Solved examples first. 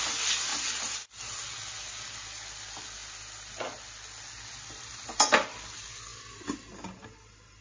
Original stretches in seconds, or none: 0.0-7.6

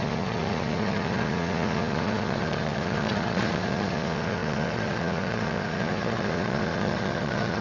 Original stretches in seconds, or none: none

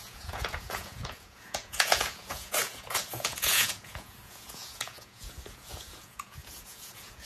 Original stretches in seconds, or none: none

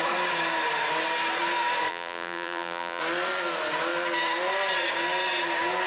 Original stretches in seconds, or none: 0.0-1.9; 3.0-5.9

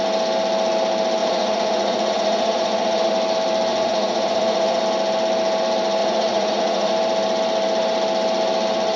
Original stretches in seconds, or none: 0.0-1.2; 3.1-3.7; 4.8-6.0; 6.9-9.0